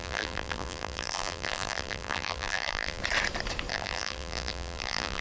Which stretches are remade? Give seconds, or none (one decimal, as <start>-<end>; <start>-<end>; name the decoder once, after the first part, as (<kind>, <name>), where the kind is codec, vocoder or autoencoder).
0.0-3.0 (vocoder, BigVGAN v2); 3.7-5.2